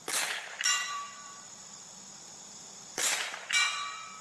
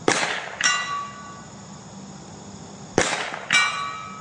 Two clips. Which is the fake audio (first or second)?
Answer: first